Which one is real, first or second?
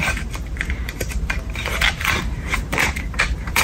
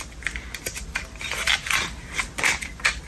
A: second